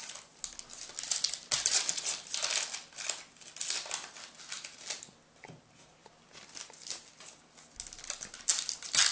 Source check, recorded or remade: recorded